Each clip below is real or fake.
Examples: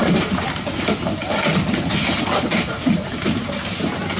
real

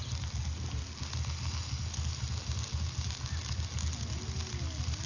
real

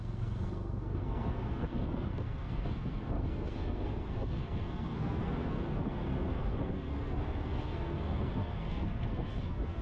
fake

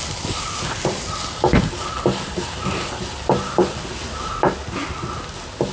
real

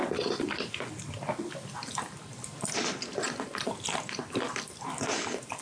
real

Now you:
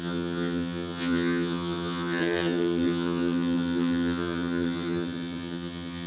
fake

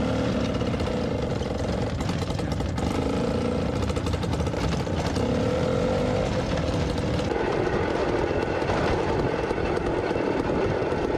real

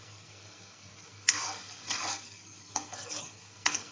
fake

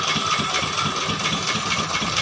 real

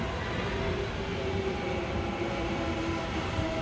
real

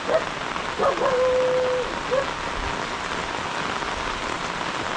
real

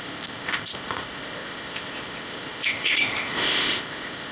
fake